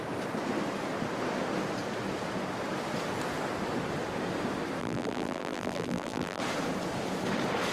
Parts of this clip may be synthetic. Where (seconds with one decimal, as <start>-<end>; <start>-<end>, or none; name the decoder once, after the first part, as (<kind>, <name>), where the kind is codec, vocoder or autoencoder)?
4.8-6.4 (vocoder, BigVGAN v2)